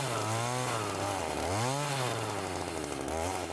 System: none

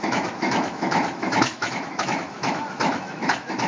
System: autoencoder, DAC-VAE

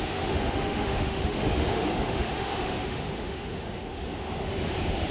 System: autoencoder, DAC-VAE